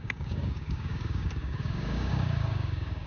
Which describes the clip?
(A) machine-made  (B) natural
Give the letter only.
A